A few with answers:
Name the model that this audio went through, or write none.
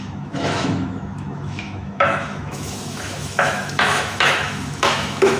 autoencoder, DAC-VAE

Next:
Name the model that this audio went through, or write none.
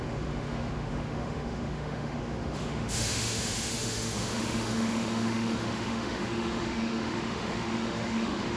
autoencoder, DAC-VAE